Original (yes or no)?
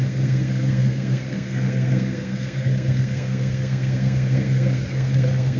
no